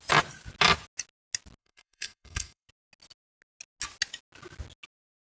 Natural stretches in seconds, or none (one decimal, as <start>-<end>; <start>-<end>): 0.0-1.6; 2.7-5.2